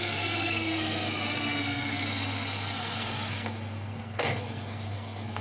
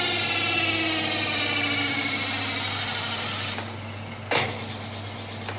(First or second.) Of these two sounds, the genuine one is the second